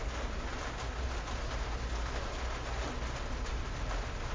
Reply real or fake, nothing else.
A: real